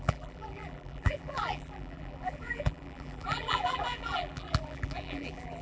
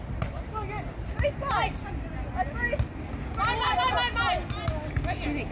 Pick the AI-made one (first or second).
first